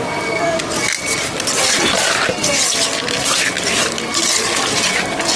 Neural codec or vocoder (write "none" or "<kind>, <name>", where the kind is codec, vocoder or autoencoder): none